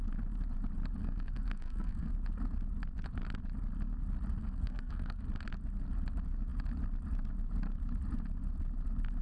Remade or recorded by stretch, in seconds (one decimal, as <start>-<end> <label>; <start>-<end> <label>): 0.0-1.0 recorded; 1.0-2.1 remade; 2.1-4.4 recorded; 4.4-5.2 remade; 5.2-9.2 recorded